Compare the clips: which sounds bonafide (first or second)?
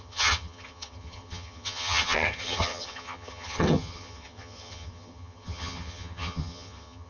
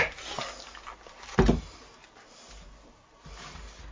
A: second